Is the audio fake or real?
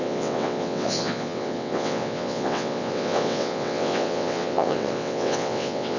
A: fake